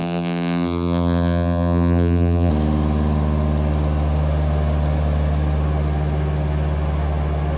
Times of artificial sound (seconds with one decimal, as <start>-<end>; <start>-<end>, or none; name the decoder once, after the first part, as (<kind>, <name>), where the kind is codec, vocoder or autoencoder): 0.0-2.5 (vocoder, BigVGAN v2)